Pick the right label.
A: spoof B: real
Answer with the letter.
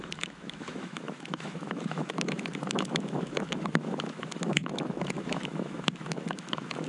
A